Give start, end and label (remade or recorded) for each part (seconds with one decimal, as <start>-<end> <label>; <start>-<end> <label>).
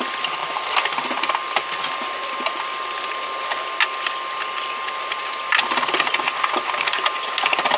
0.0-7.8 recorded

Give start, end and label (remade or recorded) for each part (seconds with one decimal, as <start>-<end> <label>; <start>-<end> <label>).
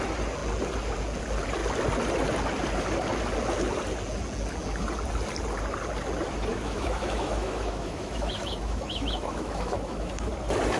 0.0-6.5 recorded; 6.5-10.3 remade; 10.3-10.8 recorded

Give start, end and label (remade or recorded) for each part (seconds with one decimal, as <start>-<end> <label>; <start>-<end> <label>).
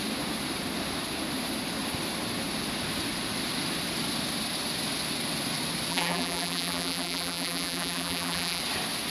0.0-5.9 recorded; 5.9-8.6 remade; 8.6-9.1 recorded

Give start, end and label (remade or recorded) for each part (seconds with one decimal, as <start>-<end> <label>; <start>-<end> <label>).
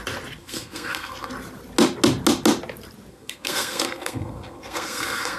0.0-0.4 recorded; 0.4-1.3 remade; 1.3-3.1 recorded; 3.1-5.4 remade